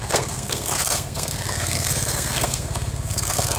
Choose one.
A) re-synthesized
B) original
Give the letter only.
A